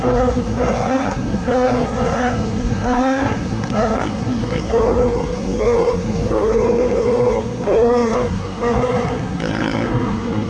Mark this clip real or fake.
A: fake